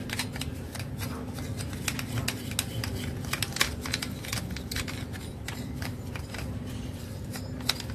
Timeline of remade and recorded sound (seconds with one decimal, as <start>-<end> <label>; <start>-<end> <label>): 0.0-0.8 remade; 0.8-2.9 recorded; 2.9-4.1 remade; 4.1-5.3 recorded; 5.3-6.3 remade; 6.3-7.9 recorded